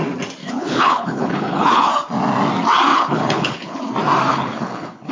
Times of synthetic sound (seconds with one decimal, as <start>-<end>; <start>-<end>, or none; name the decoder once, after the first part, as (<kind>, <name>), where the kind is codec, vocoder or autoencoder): 0.4-1.9 (codec, HILCodec); 2.9-3.8; 4.3-5.1